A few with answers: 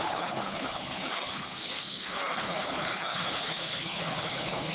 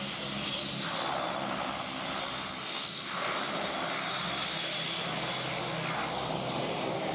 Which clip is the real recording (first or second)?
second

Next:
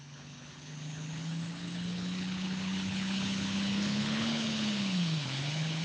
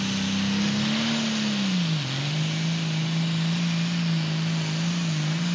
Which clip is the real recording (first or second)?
second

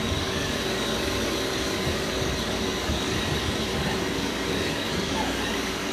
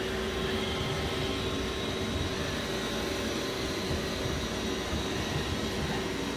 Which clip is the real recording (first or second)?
second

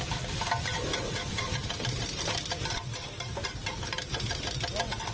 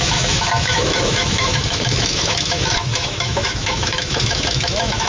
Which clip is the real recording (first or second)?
first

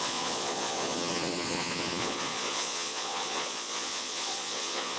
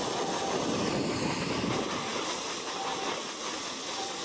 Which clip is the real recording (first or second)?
second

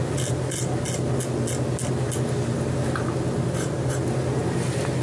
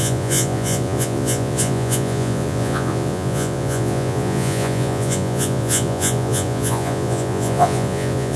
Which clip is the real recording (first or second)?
first